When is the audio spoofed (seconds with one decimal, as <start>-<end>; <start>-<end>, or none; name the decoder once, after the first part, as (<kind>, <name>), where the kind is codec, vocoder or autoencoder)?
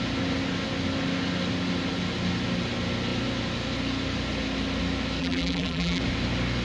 5.2-6.0 (vocoder, BigVGAN v2)